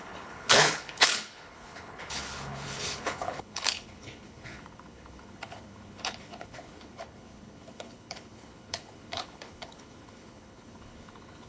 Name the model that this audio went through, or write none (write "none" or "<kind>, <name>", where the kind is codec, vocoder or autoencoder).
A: codec, HILCodec